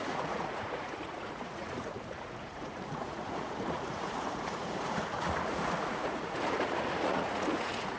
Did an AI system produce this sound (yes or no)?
yes